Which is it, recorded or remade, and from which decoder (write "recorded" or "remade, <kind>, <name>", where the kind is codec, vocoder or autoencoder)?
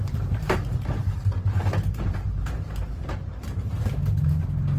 remade, vocoder, BigVGAN v2